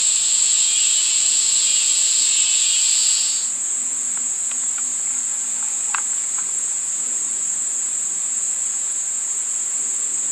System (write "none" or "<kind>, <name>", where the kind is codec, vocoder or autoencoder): vocoder, Vocos